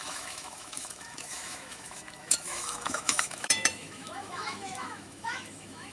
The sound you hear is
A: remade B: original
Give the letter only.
A